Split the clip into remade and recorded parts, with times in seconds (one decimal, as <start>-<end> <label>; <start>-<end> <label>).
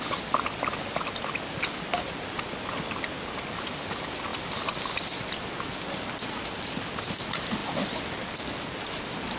0.0-9.4 recorded